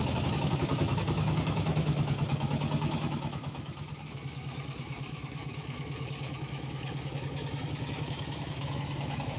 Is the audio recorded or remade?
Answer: remade